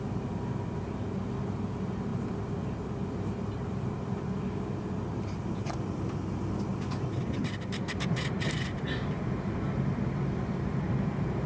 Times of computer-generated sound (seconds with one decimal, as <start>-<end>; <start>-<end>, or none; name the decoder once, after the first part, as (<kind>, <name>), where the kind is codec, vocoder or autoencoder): 2.1-3.9 (vocoder, BigVGAN v2)